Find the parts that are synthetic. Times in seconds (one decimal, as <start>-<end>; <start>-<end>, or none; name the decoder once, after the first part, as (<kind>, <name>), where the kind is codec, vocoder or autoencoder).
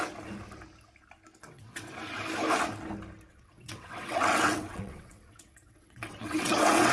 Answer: 1.4-1.9 (vocoder, WaveNeXt); 3.3-6.9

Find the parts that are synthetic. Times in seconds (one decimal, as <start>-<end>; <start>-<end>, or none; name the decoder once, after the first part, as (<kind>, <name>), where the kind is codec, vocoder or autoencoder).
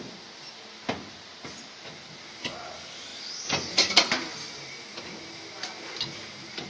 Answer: none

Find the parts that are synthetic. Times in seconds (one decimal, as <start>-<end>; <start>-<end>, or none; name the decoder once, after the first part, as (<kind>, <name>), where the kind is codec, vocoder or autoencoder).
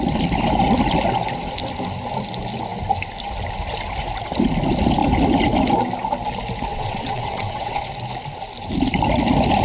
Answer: 6.7-7.9 (vocoder, WaveNeXt)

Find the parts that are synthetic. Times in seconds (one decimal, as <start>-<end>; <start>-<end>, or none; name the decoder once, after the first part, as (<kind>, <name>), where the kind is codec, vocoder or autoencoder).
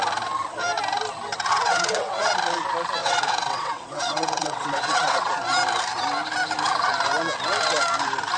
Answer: 1.5-2.3 (vocoder, WaveNeXt); 3.0-5.3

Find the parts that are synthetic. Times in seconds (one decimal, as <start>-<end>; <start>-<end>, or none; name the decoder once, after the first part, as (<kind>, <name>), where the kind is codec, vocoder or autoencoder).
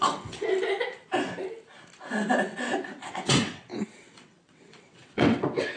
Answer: 0.0-0.5 (vocoder, WaveNeXt); 3.1-5.8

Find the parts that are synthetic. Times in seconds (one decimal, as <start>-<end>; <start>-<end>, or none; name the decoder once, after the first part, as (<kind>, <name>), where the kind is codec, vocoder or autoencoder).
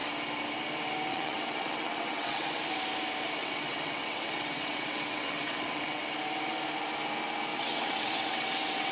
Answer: 1.1-2.6 (vocoder, WaveNeXt); 3.4-6.0; 7.5-8.9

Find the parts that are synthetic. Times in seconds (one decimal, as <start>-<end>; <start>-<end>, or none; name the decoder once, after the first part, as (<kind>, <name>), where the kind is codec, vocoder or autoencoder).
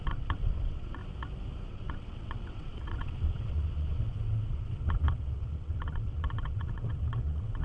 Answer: 0.0-1.0 (vocoder, WaveNeXt); 1.7-7.6